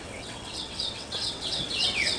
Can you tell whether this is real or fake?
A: fake